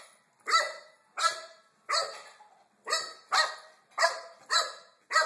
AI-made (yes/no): no